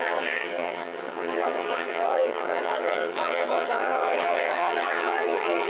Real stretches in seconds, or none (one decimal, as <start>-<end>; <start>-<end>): none